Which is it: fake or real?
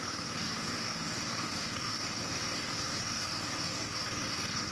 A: fake